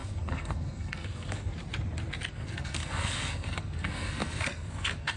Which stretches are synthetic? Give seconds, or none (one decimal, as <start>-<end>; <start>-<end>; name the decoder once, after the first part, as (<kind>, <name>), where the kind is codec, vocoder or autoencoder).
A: 0.0-1.5 (codec, SNAC); 2.3-5.2